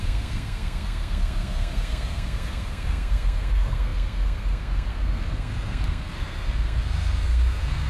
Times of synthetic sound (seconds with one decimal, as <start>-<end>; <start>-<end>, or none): 0.0-7.9